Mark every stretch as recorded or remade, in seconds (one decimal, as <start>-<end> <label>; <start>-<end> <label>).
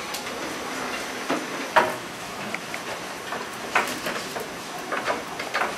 0.0-1.9 recorded; 1.9-2.5 remade; 2.5-5.8 recorded